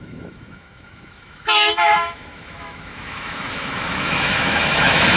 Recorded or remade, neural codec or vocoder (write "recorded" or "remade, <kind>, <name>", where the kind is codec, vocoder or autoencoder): remade, autoencoder, DAC-VAE